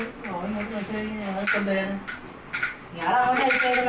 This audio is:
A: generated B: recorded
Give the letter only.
B